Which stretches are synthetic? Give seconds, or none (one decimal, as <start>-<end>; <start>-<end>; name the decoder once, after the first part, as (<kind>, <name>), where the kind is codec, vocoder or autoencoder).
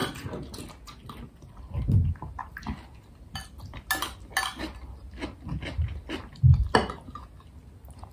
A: none